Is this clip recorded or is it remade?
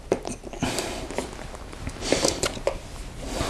recorded